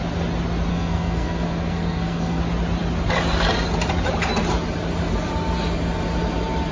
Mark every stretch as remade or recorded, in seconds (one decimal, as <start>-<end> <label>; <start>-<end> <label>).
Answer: 0.0-0.7 recorded; 0.7-2.4 remade; 2.4-6.7 recorded